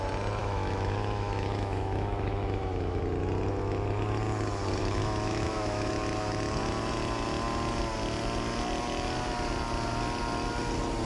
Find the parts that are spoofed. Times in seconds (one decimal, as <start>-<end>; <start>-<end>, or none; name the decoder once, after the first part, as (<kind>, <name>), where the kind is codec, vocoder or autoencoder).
0.4-3.0 (autoencoder, DAC-VAE); 4.8-5.9